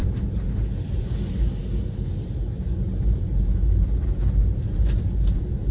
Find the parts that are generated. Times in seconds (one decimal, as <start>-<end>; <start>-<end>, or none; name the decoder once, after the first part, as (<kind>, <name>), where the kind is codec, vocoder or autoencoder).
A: none